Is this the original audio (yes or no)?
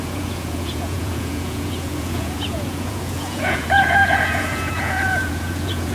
no